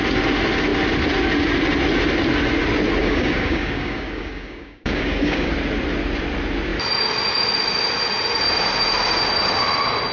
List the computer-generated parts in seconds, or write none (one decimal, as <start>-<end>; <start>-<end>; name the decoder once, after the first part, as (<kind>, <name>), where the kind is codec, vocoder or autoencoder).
3.0-5.5 (codec, DAC)